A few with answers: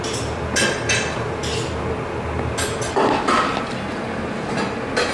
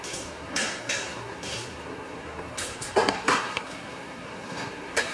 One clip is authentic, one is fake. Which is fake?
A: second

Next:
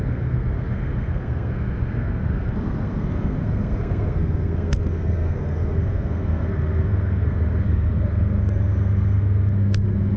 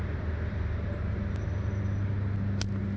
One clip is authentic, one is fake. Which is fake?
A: first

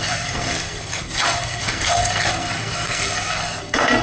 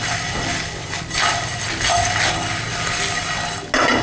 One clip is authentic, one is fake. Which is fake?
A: first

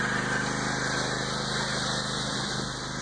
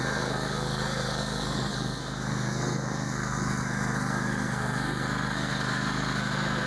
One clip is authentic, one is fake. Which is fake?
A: second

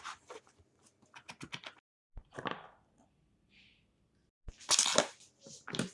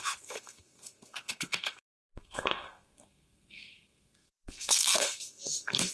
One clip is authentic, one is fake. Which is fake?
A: second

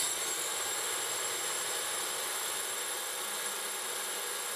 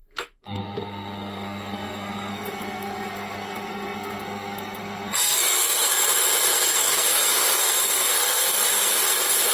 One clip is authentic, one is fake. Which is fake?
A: second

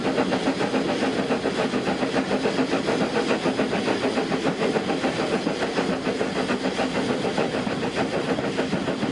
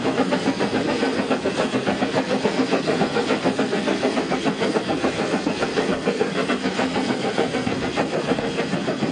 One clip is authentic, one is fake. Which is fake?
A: second